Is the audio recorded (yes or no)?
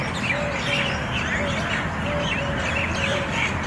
yes